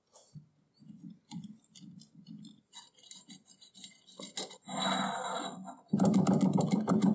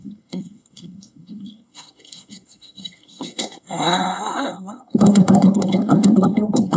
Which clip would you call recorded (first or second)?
first